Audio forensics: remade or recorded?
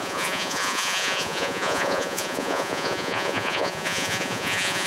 remade